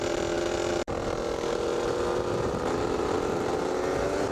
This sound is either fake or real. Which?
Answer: real